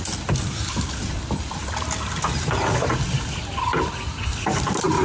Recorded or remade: recorded